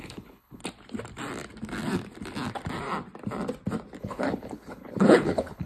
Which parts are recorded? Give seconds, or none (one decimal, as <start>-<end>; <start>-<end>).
0.6-4.0